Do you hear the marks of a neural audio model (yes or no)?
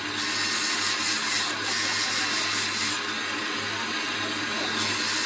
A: no